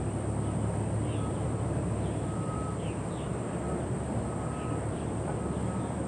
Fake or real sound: fake